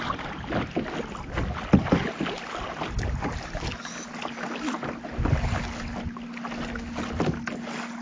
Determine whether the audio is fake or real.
real